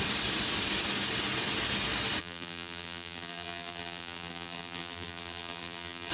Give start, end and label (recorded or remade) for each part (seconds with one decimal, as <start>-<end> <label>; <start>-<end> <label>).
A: 0.0-2.2 recorded; 2.2-6.1 remade